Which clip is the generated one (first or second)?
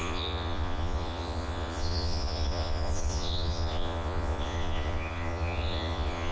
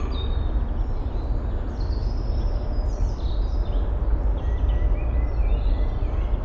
first